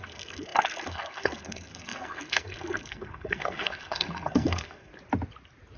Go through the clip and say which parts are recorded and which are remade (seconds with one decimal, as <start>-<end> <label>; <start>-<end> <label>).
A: 0.0-4.9 remade; 4.9-5.8 recorded